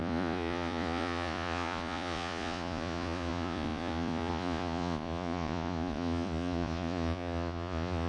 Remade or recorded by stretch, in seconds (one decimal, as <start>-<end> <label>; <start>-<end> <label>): 0.0-8.1 remade